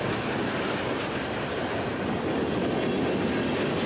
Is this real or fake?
real